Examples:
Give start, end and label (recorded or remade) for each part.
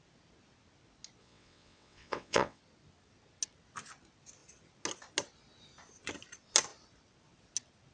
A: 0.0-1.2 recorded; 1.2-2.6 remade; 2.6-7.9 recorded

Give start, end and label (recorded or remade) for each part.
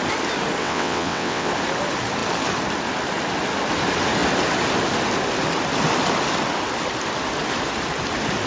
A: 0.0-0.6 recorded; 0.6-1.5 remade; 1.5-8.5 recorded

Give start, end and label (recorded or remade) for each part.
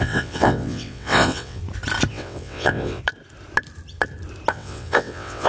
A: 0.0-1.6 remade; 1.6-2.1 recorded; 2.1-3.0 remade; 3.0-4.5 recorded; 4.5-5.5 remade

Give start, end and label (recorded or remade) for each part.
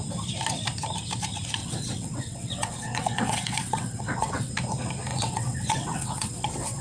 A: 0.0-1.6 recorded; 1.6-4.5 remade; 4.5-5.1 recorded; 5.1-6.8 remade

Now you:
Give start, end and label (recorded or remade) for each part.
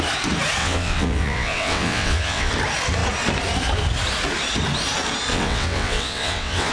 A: 0.0-0.6 recorded; 0.6-2.5 remade; 2.5-5.3 recorded; 5.3-6.7 remade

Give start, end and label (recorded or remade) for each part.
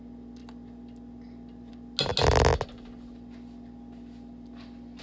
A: 0.0-5.0 recorded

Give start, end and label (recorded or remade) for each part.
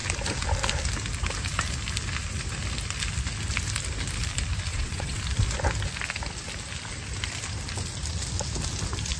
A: 0.0-4.7 recorded; 4.7-5.2 remade; 5.2-9.2 recorded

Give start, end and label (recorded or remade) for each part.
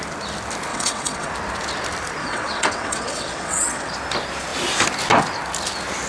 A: 0.0-0.7 recorded; 0.7-1.3 remade; 1.3-2.2 recorded; 2.2-3.9 remade; 3.9-6.1 recorded